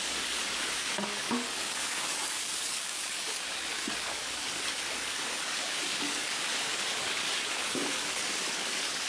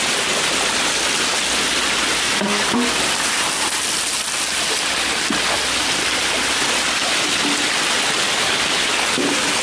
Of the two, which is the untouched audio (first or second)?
second